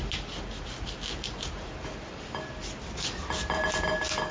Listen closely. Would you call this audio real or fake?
real